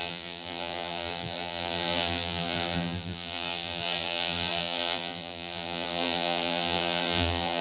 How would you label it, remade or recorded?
remade